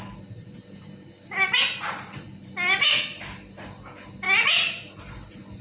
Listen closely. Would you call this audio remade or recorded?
recorded